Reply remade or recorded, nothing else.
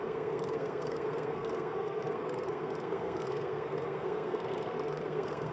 remade